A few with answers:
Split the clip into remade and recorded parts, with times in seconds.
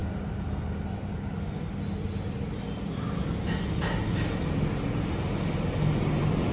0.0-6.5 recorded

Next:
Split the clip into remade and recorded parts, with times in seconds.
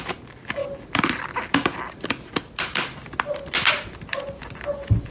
0.0-5.1 recorded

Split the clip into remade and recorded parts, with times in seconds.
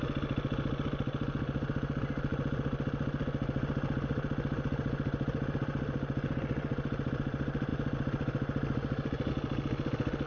0.0-10.3 recorded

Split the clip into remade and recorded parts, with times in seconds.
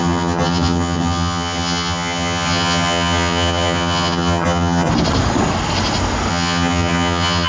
0.0-4.9 remade; 4.9-6.3 recorded; 6.3-7.5 remade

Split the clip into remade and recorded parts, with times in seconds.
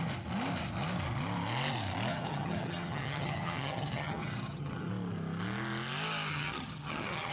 0.0-2.1 recorded; 2.1-4.9 remade; 4.9-6.3 recorded; 6.3-7.3 remade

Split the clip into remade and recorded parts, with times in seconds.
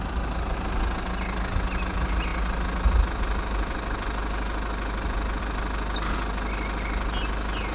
0.0-7.7 recorded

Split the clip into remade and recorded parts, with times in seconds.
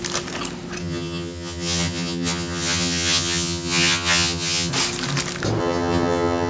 0.0-0.8 recorded; 0.8-4.7 remade; 4.7-5.6 recorded; 5.6-6.5 remade